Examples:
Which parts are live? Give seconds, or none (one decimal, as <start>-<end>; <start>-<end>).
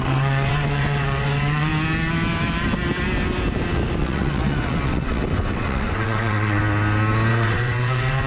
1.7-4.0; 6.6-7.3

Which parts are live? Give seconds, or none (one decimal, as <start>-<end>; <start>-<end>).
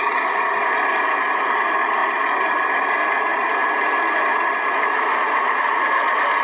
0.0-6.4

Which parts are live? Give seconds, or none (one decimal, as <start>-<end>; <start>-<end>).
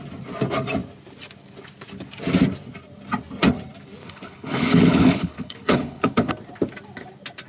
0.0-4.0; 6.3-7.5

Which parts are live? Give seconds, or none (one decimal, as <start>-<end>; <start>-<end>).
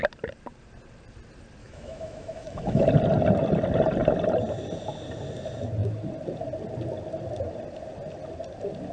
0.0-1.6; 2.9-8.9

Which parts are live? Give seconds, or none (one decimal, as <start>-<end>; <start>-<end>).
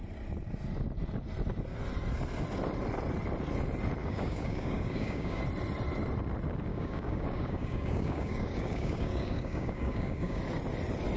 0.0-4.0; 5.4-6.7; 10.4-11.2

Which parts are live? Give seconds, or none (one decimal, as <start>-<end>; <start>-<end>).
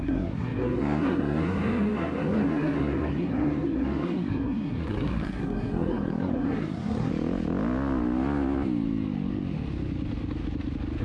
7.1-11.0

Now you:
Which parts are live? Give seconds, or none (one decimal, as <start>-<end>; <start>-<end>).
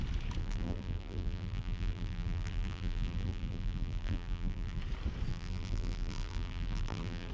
0.0-0.4; 4.8-5.3